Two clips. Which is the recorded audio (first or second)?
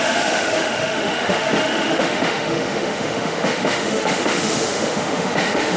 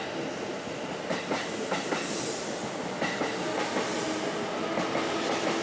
second